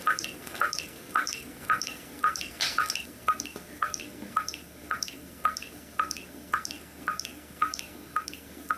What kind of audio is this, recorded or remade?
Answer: remade